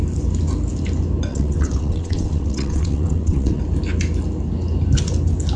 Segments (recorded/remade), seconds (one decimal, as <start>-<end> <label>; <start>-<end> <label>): 0.0-1.3 recorded; 1.3-3.6 remade; 3.6-5.6 recorded